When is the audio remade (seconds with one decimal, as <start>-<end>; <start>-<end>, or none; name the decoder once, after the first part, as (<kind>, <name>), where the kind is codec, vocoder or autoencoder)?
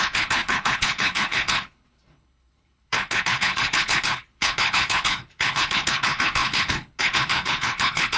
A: 0.0-8.2 (codec, HILCodec)